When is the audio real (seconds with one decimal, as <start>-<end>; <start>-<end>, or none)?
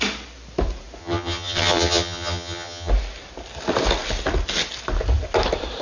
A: 0.0-1.0; 2.9-5.8